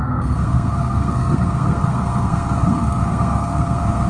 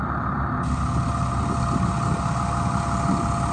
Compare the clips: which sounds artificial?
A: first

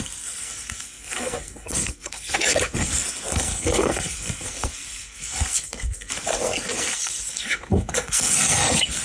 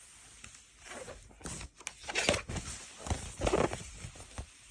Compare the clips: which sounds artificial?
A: first